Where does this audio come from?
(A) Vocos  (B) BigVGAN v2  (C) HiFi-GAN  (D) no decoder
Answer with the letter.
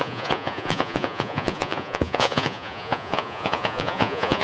A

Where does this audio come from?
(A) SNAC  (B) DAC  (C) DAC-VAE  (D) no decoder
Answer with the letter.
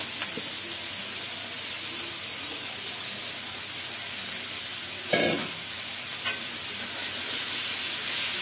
D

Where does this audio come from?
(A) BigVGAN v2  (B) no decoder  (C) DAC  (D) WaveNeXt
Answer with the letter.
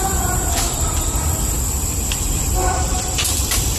A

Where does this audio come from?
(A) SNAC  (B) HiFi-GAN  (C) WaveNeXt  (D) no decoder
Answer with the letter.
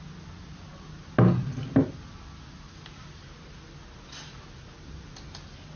D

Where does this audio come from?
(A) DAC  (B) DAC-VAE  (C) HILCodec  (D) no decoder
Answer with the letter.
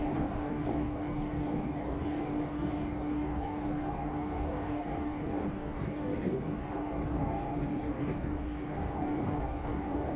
A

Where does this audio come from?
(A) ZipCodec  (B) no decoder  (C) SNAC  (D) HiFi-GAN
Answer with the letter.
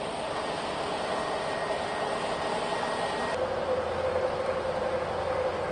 B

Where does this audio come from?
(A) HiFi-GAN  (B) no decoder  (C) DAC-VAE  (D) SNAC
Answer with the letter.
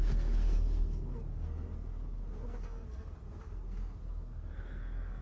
D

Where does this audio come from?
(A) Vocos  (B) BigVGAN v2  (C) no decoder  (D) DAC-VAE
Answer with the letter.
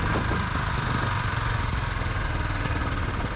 C